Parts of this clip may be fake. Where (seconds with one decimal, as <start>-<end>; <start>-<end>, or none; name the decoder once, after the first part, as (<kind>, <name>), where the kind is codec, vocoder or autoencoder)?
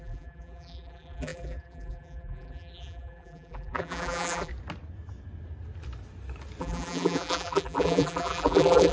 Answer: 0.0-4.5 (vocoder, BigVGAN v2); 6.6-8.9